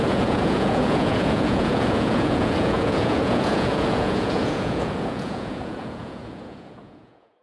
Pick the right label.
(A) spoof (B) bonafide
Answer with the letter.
A